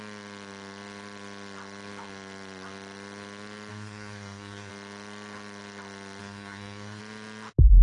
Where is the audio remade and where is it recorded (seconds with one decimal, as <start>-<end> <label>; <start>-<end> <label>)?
0.0-3.7 recorded; 3.7-4.7 remade; 4.7-6.2 recorded; 6.2-7.0 remade; 7.0-7.8 recorded